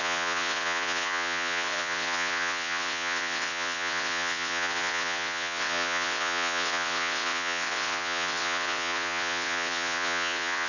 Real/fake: fake